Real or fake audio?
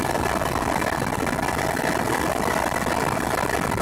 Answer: real